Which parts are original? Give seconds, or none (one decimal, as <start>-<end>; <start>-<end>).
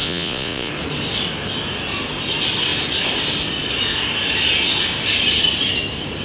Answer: 0.7-6.2